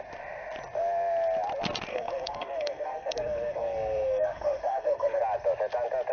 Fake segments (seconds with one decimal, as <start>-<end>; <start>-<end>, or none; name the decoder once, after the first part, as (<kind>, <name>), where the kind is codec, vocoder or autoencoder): 1.9-5.2 (codec, SNAC)